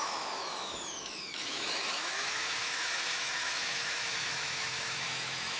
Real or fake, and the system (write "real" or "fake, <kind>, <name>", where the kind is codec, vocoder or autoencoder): fake, autoencoder, DAC-VAE